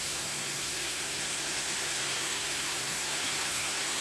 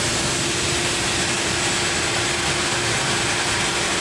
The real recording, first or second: second